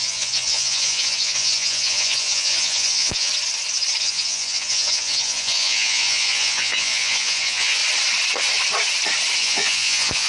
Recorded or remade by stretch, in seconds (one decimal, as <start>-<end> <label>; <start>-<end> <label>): 0.0-3.3 remade; 3.3-4.0 recorded; 4.0-7.8 remade; 7.8-9.4 recorded; 9.4-10.3 remade